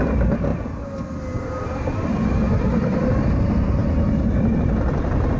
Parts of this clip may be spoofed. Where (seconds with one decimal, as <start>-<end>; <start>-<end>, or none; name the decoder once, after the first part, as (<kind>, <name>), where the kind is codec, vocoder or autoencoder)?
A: 0.0-0.5 (vocoder, BigVGAN v2); 3.4-5.4

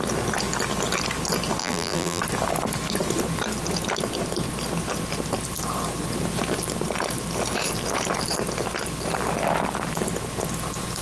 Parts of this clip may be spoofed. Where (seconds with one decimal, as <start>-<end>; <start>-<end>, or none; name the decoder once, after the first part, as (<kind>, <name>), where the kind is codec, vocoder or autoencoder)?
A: 1.6-2.2 (vocoder, BigVGAN v2)

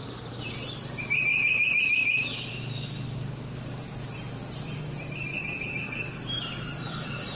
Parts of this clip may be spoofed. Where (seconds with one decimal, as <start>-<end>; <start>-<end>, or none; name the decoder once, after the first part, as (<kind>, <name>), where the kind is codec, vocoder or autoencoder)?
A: 0.0-7.4 (vocoder, BigVGAN v2)

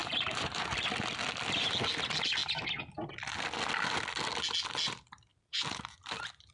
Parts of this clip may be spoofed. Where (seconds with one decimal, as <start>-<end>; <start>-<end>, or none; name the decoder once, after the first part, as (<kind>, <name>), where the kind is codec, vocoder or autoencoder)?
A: 0.0-0.7 (vocoder, BigVGAN v2); 5.3-6.5

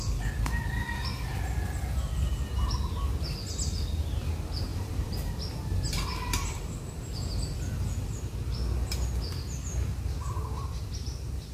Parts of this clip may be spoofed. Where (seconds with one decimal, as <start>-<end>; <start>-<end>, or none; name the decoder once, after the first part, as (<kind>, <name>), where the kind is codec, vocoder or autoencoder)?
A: 4.7-5.3 (vocoder, BigVGAN v2)

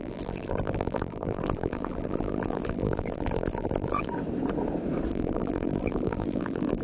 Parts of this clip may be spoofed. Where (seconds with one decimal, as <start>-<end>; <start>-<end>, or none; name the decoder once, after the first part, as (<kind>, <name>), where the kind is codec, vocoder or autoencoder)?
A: 0.0-4.1 (vocoder, BigVGAN v2); 5.1-6.8

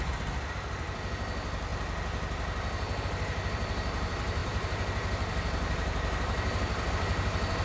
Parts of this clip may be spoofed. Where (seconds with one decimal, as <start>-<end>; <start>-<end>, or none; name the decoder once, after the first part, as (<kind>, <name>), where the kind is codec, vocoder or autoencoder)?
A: 0.0-1.7 (vocoder, BigVGAN v2); 3.0-7.6

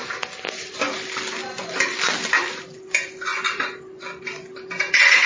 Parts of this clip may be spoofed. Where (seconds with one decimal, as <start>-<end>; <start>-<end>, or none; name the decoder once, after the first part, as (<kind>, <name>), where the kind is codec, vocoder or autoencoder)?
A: none